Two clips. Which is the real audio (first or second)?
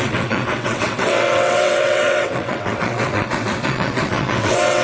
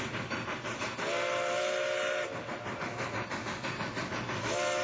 second